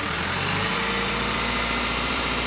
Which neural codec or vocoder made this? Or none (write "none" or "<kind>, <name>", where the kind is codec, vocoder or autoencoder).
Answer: vocoder, BigVGAN v2